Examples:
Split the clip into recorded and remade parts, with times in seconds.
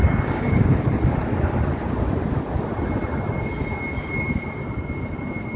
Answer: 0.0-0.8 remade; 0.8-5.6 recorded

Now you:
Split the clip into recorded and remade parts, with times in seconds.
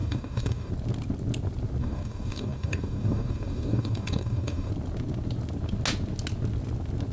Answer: 0.0-0.7 remade; 0.7-1.8 recorded; 1.8-4.7 remade; 4.7-7.1 recorded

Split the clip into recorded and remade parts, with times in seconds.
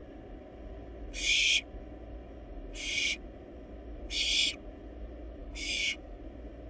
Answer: 0.0-5.4 recorded; 5.4-6.2 remade; 6.2-6.7 recorded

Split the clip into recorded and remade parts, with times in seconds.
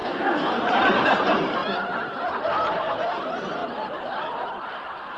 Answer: 0.0-0.6 remade; 0.6-5.2 recorded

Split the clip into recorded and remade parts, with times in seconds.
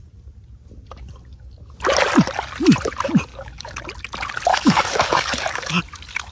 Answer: 0.0-3.3 recorded; 3.3-3.8 remade; 3.8-4.5 recorded; 4.5-5.8 remade; 5.8-6.3 recorded